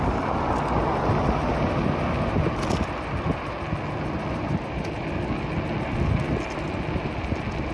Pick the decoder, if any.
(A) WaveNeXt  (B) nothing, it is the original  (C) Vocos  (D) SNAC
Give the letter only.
B